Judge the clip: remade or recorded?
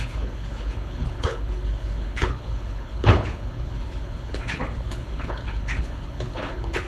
remade